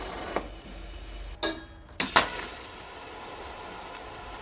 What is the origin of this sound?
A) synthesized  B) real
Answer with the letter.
B